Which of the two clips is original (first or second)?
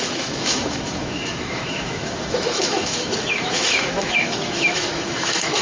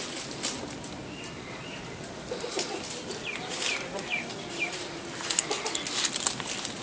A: second